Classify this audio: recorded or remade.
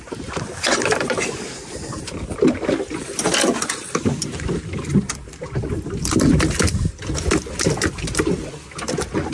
recorded